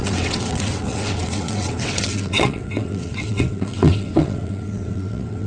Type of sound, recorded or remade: remade